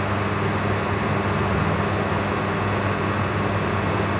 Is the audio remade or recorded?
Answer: recorded